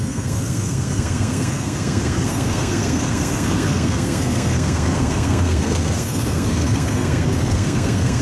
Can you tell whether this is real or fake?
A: fake